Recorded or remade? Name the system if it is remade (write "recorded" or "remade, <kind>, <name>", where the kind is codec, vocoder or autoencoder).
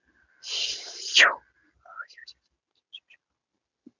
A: recorded